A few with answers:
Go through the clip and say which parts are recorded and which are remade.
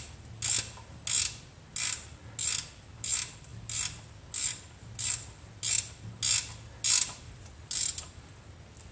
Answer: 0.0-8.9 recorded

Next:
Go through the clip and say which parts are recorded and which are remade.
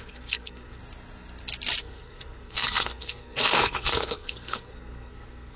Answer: 0.0-0.8 remade; 0.8-1.8 recorded; 1.8-5.6 remade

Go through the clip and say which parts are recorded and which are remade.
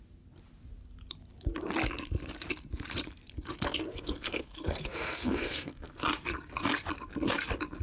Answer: 0.0-3.9 recorded; 3.9-5.9 remade; 5.9-7.8 recorded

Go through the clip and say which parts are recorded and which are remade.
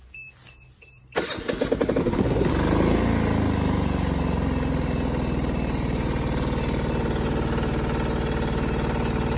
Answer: 0.0-2.0 recorded; 2.0-2.5 remade; 2.5-9.4 recorded